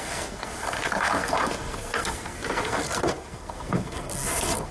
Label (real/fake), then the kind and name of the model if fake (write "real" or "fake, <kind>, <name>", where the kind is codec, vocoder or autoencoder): fake, codec, SNAC